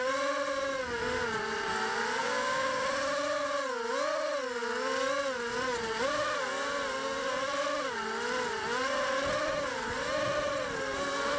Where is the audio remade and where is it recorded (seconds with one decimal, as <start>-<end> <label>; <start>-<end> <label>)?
0.0-2.2 recorded; 2.2-2.7 remade; 2.7-11.4 recorded